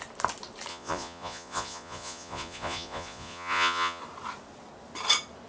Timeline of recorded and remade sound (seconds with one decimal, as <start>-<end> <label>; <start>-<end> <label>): 0.0-0.7 recorded; 0.7-4.0 remade; 4.0-5.5 recorded